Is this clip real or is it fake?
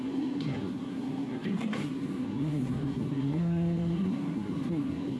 fake